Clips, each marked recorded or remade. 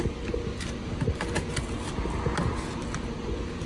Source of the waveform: recorded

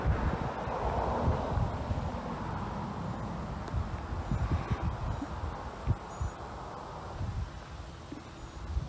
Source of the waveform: recorded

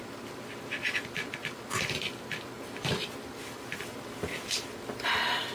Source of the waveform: remade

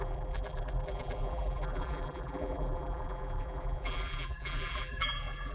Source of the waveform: remade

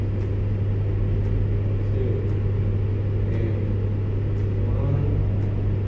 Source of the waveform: recorded